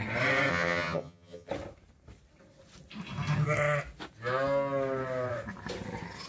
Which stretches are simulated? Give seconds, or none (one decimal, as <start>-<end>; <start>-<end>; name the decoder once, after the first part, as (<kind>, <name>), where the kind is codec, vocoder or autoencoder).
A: 0.5-1.5 (vocoder, HiFi-GAN)